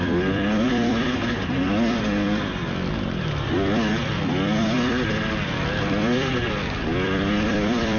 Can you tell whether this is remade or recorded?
remade